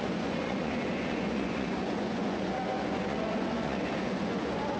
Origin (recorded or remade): remade